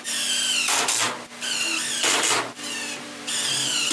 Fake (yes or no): no